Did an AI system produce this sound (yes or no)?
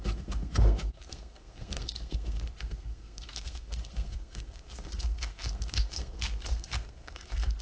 yes